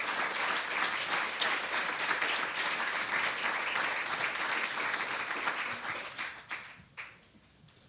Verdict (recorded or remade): recorded